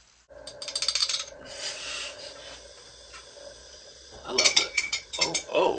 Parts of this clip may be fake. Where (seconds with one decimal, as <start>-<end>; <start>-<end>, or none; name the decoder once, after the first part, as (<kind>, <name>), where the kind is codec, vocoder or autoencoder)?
1.0-1.8 (vocoder, Vocos); 3.6-5.8